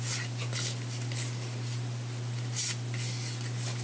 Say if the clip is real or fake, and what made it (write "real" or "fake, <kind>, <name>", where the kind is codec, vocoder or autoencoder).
real